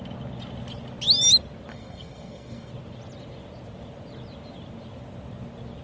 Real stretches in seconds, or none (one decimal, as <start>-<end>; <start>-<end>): 0.0-1.7; 2.7-5.8